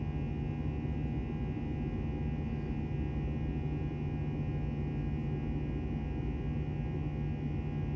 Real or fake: real